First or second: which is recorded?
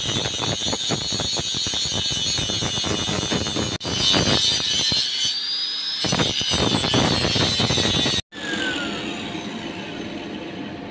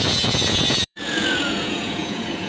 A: first